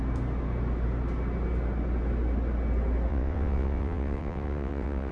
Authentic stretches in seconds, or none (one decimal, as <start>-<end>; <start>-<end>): 0.0-3.1